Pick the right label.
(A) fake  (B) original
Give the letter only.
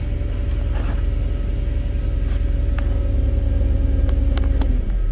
B